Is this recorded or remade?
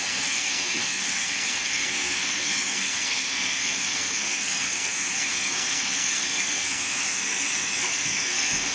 remade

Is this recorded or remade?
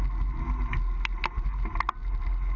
recorded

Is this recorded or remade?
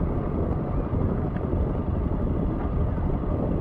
recorded